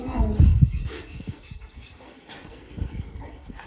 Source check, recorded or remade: remade